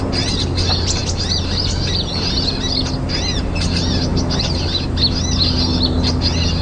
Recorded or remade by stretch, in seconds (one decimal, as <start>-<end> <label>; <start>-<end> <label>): 0.0-6.6 recorded